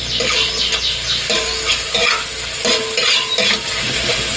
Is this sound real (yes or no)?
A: yes